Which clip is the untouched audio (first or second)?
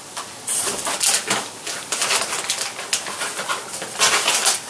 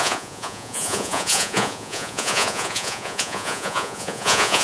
first